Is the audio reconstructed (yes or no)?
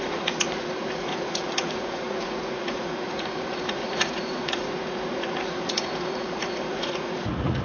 yes